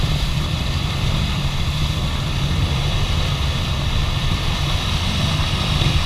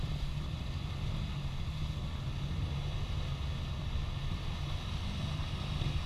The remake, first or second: first